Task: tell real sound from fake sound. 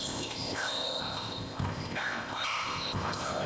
fake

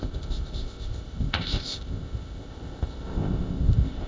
fake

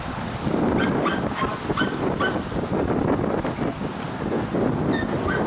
real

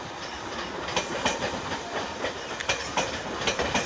real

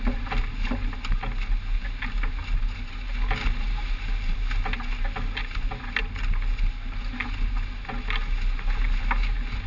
real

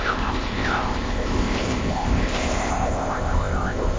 fake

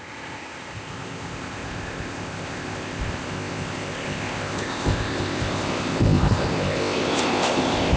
fake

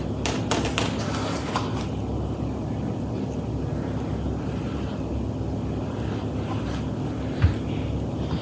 real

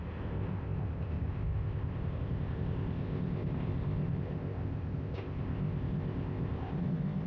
fake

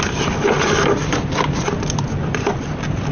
real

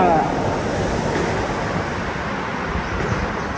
real